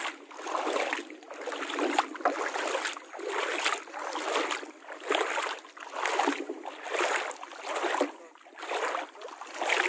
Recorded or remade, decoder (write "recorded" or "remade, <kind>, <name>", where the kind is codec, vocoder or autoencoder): recorded